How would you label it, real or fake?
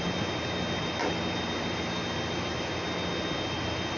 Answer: real